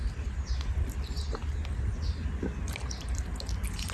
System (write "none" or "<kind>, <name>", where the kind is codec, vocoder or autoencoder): none